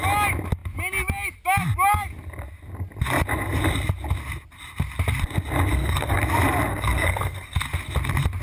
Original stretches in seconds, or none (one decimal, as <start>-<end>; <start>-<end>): 0.0-5.7; 6.2-6.7; 7.6-8.4